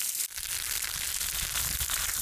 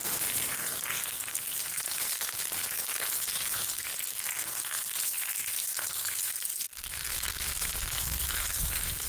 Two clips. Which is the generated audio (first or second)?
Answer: second